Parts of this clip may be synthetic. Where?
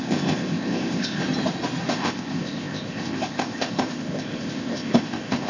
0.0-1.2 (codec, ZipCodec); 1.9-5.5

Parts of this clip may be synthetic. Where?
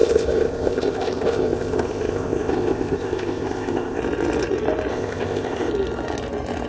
0.0-4.0 (codec, ZipCodec); 4.9-5.7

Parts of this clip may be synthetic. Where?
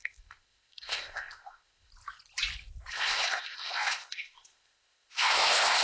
0.0-1.9 (codec, ZipCodec); 2.9-5.8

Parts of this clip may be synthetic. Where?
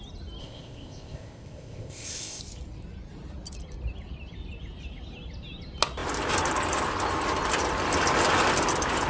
0.4-2.4 (codec, ZipCodec)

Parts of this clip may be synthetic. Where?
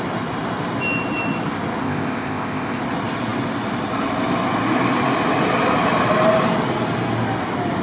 1.8-2.8 (codec, ZipCodec)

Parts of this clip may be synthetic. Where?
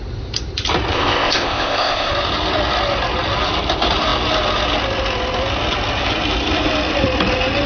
0.9-2.1 (codec, ZipCodec)